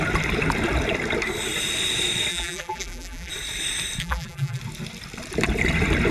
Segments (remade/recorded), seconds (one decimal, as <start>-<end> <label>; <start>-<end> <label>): 0.0-2.3 recorded; 2.3-3.3 remade; 3.3-4.0 recorded; 4.0-4.6 remade; 4.6-6.1 recorded